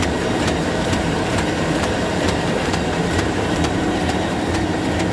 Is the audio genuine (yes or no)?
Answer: no